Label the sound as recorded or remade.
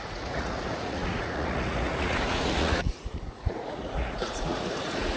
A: remade